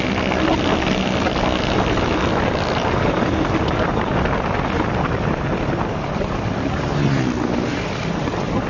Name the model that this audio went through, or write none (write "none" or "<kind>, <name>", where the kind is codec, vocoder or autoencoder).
none